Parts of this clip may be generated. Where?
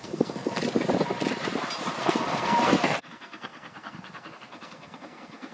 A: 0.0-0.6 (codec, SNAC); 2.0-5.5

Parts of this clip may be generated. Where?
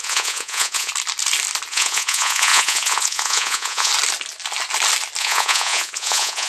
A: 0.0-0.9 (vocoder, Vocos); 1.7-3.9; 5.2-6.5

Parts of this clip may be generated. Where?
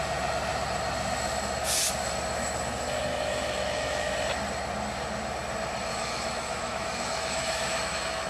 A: 3.1-4.1 (autoencoder, DAC-VAE); 5.9-8.3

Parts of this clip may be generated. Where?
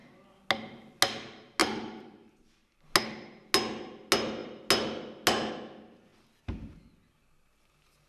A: 1.6-2.3 (vocoder, BigVGAN v2)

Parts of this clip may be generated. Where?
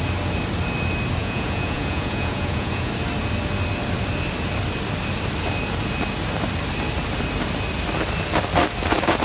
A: 1.2-2.9 (vocoder, Vocos)